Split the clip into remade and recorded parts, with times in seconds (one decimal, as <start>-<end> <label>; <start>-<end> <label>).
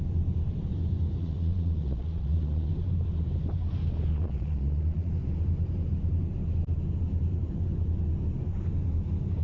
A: 0.0-1.2 recorded; 1.2-2.7 remade; 2.7-4.1 recorded; 4.1-5.1 remade; 5.1-9.4 recorded